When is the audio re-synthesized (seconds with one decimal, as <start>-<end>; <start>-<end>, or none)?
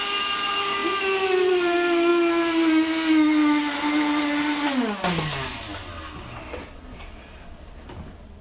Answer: none